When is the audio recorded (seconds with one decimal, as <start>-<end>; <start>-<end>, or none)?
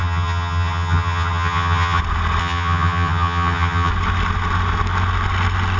2.0-2.4; 3.9-5.8